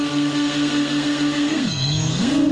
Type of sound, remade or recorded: remade